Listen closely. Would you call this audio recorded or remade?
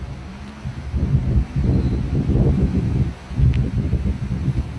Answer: remade